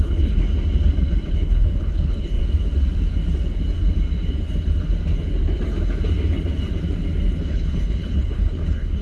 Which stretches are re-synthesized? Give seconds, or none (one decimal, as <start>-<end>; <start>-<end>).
0.0-0.5; 1.3-2.4; 7.5-9.0